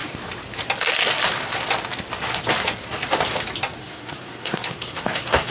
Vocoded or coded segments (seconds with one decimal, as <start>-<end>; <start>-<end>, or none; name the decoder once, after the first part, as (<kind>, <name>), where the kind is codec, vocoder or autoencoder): 3.8-5.5 (codec, SNAC)

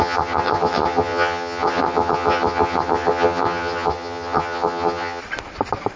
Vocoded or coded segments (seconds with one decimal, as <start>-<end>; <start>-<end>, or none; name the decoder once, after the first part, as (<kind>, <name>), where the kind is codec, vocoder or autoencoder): 0.0-5.2 (vocoder, HiFi-GAN)

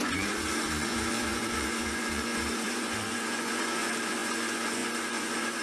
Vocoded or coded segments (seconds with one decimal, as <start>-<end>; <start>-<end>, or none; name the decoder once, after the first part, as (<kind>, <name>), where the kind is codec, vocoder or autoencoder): 0.0-5.6 (vocoder, Vocos)

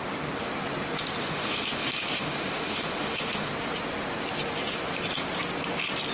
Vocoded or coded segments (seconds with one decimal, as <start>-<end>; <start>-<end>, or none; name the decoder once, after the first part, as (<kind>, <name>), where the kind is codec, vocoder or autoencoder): 1.2-3.5 (autoencoder, DAC-VAE)